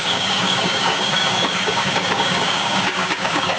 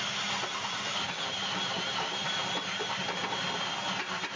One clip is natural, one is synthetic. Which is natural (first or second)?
second